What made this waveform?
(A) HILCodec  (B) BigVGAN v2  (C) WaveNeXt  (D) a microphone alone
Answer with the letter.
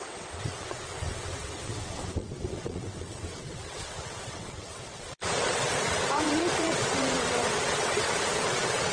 C